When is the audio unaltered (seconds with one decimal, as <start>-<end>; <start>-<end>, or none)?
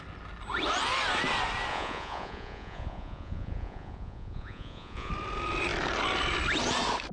0.0-1.7; 5.1-7.1